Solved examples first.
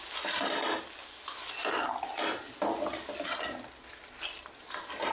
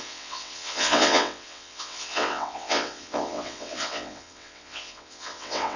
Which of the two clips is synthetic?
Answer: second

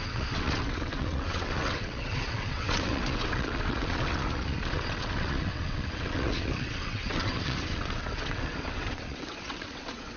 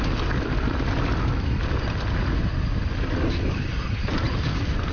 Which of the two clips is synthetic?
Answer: first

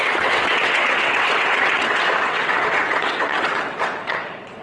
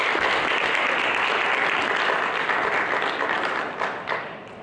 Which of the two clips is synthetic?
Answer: first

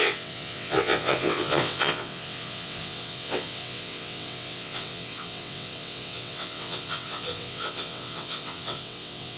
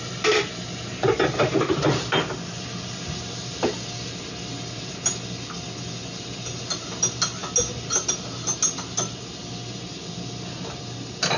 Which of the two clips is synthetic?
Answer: first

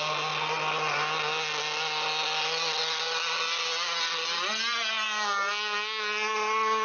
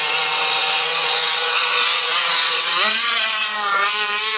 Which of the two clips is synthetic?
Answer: second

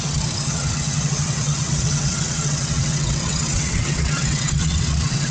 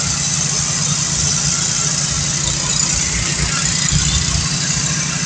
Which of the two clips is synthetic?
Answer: first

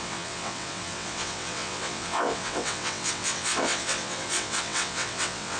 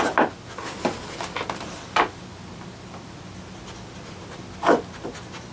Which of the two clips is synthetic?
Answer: first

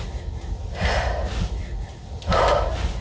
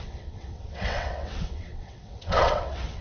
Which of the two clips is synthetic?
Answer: second